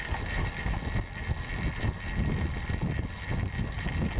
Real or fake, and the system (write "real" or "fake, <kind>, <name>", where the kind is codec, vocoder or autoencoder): real